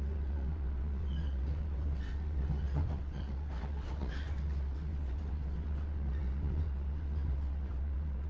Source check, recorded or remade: remade